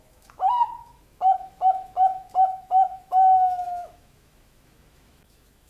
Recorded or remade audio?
remade